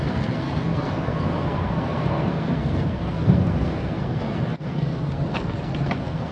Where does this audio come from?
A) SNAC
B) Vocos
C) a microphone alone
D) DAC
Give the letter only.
A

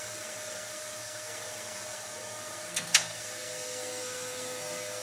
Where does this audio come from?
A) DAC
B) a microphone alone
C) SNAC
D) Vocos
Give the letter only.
C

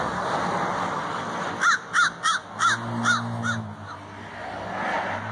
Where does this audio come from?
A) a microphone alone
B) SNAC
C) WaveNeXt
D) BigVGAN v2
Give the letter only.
A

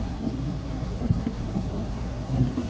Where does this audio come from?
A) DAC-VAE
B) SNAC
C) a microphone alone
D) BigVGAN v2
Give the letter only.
B